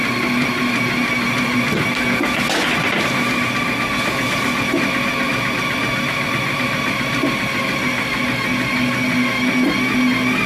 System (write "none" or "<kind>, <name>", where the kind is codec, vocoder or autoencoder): none